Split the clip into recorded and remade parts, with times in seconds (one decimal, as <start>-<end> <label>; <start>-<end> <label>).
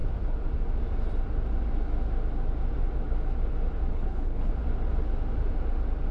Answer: 0.0-3.9 recorded; 3.9-4.5 remade; 4.5-6.1 recorded